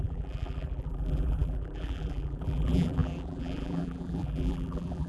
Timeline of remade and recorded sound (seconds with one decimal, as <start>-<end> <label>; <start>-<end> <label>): 0.0-5.1 remade